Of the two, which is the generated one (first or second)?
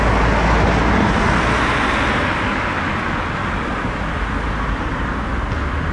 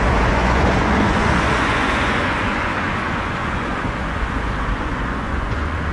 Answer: second